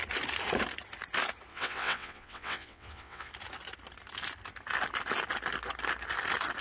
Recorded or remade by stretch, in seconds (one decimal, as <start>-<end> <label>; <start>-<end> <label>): 0.0-1.5 recorded; 1.5-3.3 remade; 3.3-6.6 recorded